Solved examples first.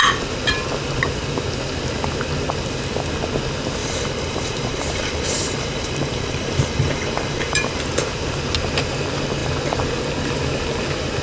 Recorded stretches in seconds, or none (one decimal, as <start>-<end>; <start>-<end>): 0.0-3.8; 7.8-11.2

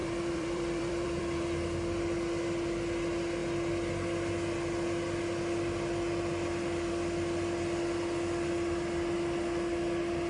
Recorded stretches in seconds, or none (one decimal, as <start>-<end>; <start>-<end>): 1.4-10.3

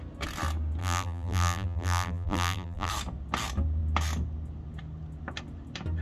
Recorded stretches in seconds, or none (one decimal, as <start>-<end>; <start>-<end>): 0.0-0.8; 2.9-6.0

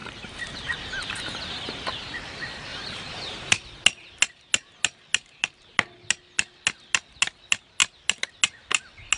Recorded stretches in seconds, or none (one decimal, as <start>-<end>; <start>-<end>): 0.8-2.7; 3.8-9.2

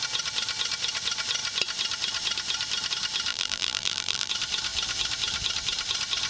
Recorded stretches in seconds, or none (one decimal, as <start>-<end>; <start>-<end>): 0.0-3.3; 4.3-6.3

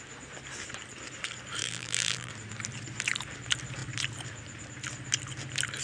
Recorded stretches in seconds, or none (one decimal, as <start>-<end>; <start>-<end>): 0.0-1.6; 2.3-5.8

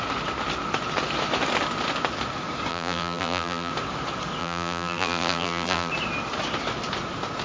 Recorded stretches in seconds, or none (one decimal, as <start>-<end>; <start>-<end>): 0.0-2.7; 3.7-4.4; 5.9-7.4

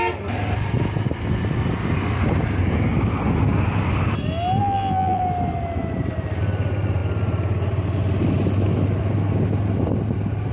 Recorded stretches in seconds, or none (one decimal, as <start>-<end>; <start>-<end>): 0.0-4.6; 5.2-10.5